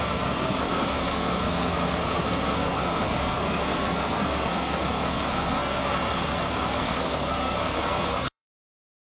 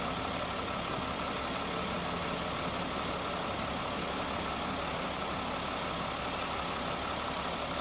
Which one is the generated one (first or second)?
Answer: first